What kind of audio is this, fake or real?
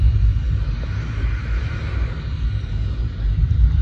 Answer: real